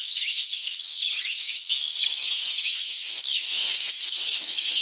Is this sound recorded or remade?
remade